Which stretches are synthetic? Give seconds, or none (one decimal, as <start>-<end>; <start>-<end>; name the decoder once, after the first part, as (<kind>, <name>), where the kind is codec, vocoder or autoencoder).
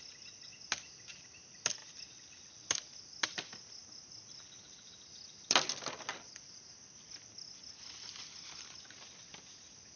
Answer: none